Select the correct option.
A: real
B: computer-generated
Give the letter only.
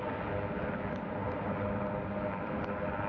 A